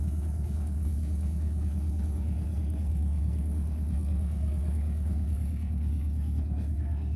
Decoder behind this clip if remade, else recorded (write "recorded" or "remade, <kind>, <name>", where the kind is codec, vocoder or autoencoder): remade, codec, SNAC